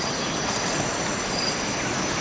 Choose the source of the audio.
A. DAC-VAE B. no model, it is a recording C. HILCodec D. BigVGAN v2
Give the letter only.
B